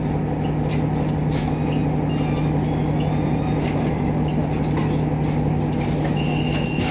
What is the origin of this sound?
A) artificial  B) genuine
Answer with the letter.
B